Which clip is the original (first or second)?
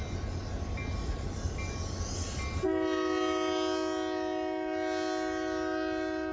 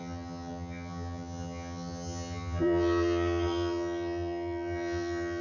first